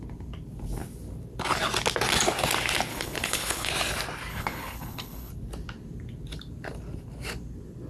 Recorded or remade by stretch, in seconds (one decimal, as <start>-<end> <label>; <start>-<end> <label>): 0.0-2.9 recorded; 2.9-3.7 remade; 3.7-4.3 recorded; 4.3-5.3 remade; 5.3-7.9 recorded